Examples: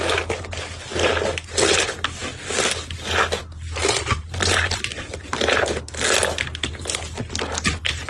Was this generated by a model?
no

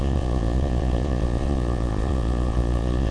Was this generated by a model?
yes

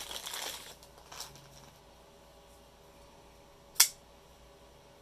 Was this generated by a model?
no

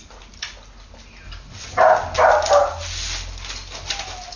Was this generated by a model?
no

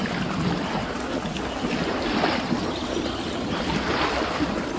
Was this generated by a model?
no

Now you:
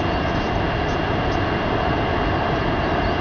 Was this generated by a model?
no